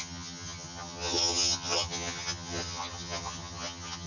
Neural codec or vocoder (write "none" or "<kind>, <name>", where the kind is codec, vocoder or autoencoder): vocoder, HiFi-GAN